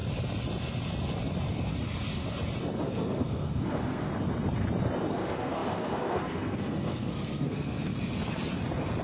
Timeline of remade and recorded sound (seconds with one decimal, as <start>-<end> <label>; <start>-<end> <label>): 0.0-2.8 recorded; 2.8-4.1 remade; 4.1-5.1 recorded; 5.1-7.9 remade; 7.9-9.0 recorded